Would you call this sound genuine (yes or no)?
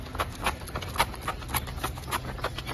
yes